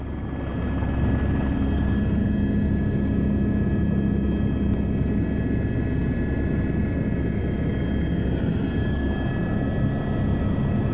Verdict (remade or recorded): recorded